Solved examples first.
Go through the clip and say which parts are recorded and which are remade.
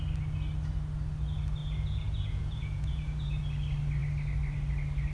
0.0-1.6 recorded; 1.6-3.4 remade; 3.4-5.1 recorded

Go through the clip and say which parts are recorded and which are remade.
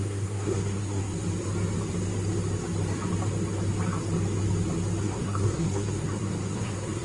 0.0-1.1 remade; 1.1-5.0 recorded; 5.0-7.0 remade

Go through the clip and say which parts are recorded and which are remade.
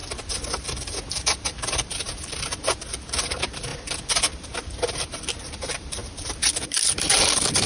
0.0-1.1 recorded; 1.1-3.7 remade; 3.7-4.3 recorded; 4.3-7.7 remade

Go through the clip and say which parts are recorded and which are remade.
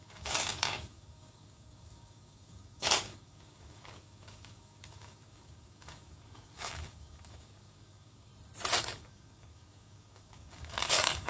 0.0-8.3 remade; 8.3-8.8 recorded; 8.8-11.3 remade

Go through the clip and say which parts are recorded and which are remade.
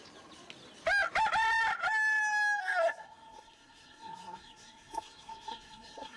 0.0-2.6 recorded; 2.6-6.2 remade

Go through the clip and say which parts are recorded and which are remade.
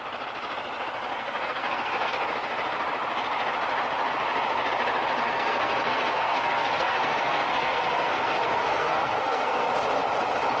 0.0-1.1 recorded; 1.1-2.1 remade; 2.1-5.2 recorded; 5.2-9.7 remade; 9.7-10.6 recorded